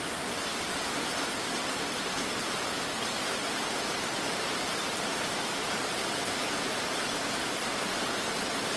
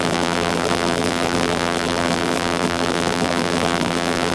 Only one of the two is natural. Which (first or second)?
first